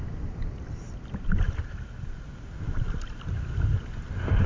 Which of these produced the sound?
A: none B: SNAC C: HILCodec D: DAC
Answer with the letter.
A